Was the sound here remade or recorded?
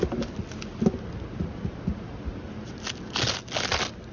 recorded